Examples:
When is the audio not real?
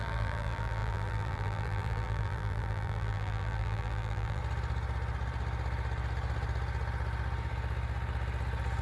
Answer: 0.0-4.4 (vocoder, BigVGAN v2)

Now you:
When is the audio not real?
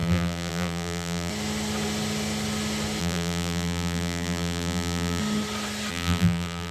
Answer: 0.0-1.3 (vocoder, BigVGAN v2); 3.0-5.2; 5.9-6.7